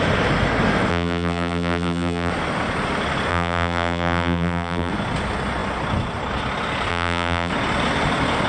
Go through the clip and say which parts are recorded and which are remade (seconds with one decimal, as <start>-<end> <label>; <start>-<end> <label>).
0.0-0.9 recorded; 0.9-2.3 remade; 2.3-3.3 recorded; 3.3-4.9 remade; 4.9-6.9 recorded; 6.9-7.5 remade; 7.5-8.5 recorded